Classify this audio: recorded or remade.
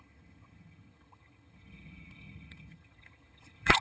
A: remade